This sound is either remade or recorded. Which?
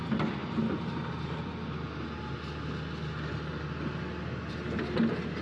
recorded